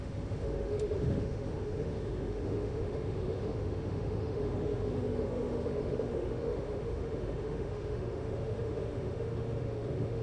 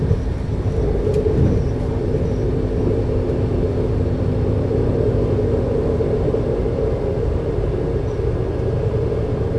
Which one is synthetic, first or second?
first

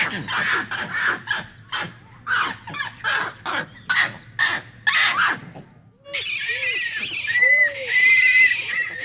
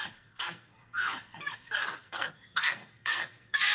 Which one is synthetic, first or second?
second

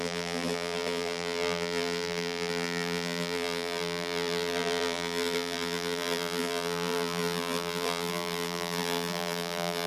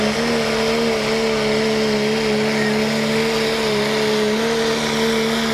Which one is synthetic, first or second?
first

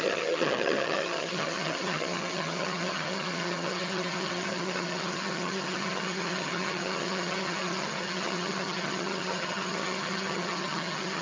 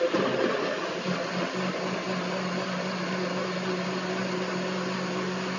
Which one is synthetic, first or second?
first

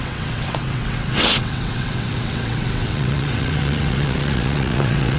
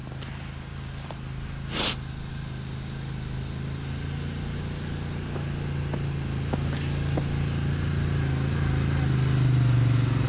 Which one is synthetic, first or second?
first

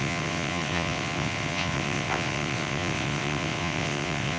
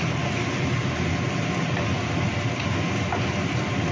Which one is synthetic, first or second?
first